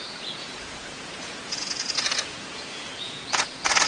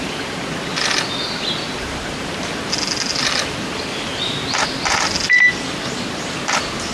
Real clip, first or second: second